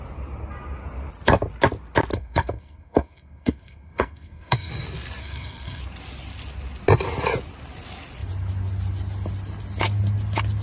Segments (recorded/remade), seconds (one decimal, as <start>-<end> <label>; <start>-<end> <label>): 0.0-2.1 recorded; 2.1-4.7 remade; 4.7-5.2 recorded; 5.2-5.8 remade; 5.8-10.6 recorded